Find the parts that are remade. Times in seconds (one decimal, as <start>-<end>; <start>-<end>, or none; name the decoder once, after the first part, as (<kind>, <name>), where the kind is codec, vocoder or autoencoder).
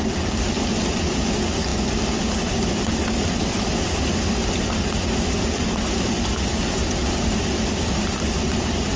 none